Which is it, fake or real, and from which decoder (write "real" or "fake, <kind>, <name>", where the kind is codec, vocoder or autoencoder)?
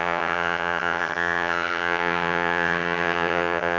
fake, vocoder, HiFi-GAN